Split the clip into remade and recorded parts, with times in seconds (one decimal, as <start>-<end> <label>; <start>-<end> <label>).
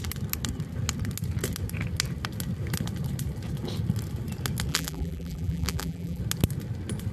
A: 0.0-4.7 recorded; 4.7-6.2 remade; 6.2-7.1 recorded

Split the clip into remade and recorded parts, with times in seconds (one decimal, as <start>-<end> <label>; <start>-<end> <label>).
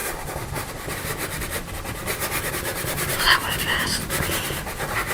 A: 0.0-0.5 recorded; 0.5-2.0 remade; 2.0-2.5 recorded; 2.5-5.1 remade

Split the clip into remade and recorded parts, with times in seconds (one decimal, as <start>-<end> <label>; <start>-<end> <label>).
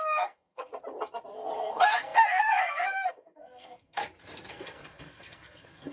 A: 0.0-0.7 remade; 0.7-1.6 recorded; 1.6-4.0 remade; 4.0-4.5 recorded; 4.5-5.9 remade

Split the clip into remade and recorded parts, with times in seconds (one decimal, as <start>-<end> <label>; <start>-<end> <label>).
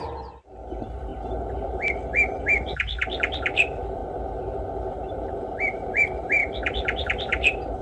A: 0.0-4.0 remade; 4.0-4.9 recorded; 4.9-7.8 remade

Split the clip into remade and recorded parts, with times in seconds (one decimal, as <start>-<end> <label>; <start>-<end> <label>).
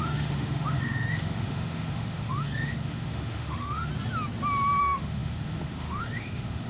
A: 0.0-3.9 remade; 3.9-4.8 recorded; 4.8-6.7 remade